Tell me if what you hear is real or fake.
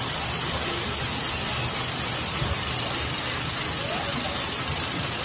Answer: real